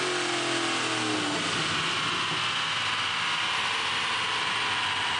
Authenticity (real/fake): real